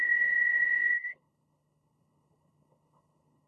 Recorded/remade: remade